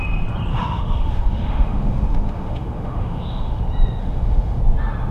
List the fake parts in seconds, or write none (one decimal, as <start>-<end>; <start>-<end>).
0.5-3.6; 4.0-4.6